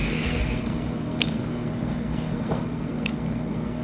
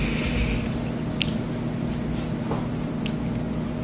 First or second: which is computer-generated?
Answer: first